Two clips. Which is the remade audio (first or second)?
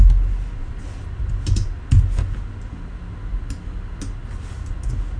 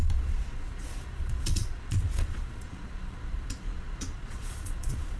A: second